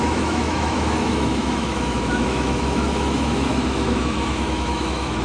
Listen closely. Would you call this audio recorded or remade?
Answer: remade